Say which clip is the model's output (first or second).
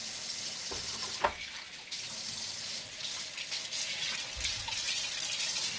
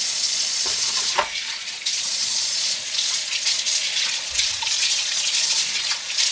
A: second